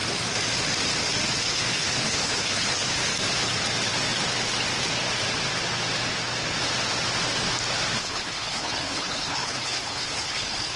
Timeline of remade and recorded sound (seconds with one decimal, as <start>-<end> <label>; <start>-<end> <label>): 0.0-1.4 recorded; 1.4-3.1 remade; 3.1-8.0 recorded; 8.0-10.8 remade